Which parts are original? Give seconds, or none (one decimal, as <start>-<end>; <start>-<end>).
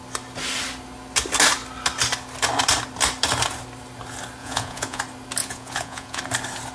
0.0-4.4; 5.0-5.4; 6.2-6.7